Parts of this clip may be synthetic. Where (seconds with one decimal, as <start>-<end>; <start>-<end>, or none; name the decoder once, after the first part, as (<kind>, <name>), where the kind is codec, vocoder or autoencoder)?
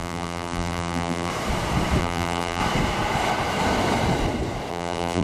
0.0-1.3 (vocoder, BigVGAN v2); 2.0-2.6; 4.7-5.2